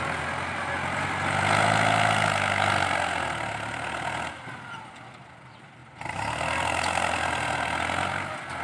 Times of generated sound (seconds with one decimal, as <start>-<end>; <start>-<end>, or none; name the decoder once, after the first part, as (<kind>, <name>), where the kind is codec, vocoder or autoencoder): none